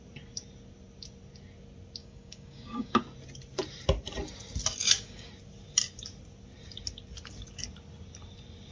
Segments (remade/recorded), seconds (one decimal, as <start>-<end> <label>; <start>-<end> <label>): 0.0-2.0 recorded; 2.0-3.0 remade; 3.0-4.8 recorded; 4.8-5.3 remade; 5.3-8.7 recorded